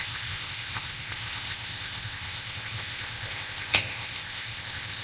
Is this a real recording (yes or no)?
no